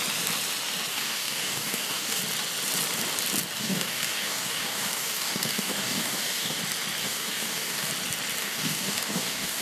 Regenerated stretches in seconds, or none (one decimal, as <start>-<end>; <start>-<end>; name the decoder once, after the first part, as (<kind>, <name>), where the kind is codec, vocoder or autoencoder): 0.9-2.2 (codec, DAC); 3.6-6.6; 7.0-7.9; 8.4-9.6